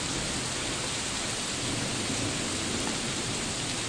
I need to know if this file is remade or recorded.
recorded